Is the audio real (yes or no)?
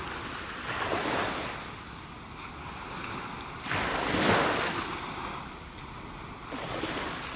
yes